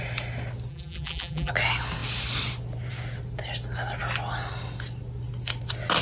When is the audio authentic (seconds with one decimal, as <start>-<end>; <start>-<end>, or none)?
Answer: 0.0-0.7; 1.5-6.0